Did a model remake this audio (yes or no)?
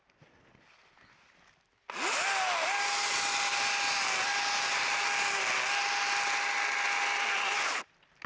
no